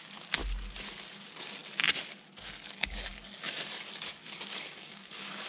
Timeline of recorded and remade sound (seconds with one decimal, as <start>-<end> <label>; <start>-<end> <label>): 0.0-0.4 remade; 0.4-1.0 recorded; 1.0-1.6 remade; 1.6-2.7 recorded; 2.7-5.5 remade